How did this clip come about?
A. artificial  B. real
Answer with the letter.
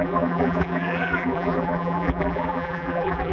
A